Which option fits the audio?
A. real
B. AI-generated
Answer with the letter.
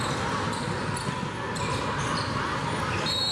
A